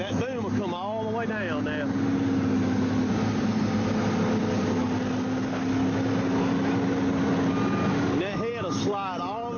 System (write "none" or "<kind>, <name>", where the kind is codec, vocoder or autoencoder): none